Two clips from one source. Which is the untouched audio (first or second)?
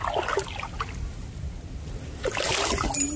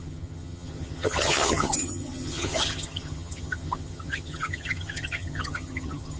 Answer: first